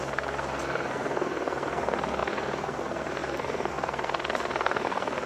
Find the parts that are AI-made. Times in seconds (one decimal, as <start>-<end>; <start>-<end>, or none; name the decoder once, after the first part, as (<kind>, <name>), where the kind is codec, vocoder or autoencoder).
0.0-5.3 (codec, SNAC)